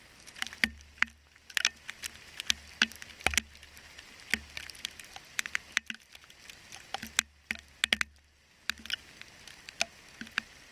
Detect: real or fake real